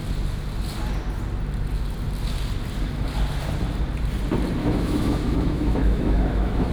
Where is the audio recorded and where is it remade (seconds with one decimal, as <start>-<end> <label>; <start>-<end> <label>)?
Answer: 0.0-4.6 recorded; 4.6-6.7 remade